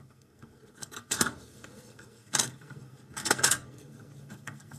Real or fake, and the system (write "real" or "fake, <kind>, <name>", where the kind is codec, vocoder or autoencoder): fake, codec, SNAC